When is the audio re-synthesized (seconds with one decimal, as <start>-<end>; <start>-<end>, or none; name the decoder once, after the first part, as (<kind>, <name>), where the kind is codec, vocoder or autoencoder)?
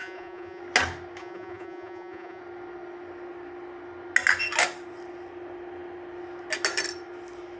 0.0-0.6 (vocoder, Vocos); 1.2-2.4